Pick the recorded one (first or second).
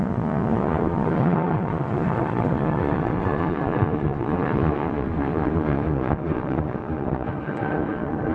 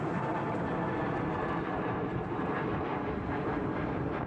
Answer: second